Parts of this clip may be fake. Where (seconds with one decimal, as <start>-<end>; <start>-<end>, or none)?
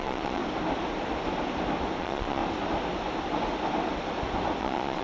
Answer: 0.0-0.4; 2.0-2.4; 4.6-5.0